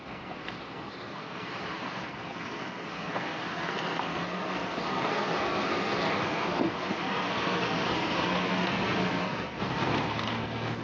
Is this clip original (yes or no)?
no